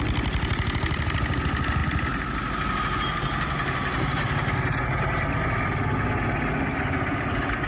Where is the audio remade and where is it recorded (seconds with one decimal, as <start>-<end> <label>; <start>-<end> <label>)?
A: 0.0-7.7 recorded